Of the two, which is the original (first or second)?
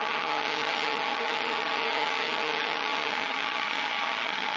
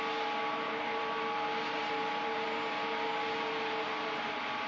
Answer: second